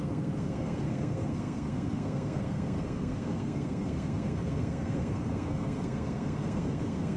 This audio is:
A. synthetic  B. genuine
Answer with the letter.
A